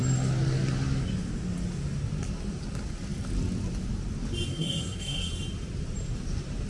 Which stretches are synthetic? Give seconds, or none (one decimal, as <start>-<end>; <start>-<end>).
4.5-5.3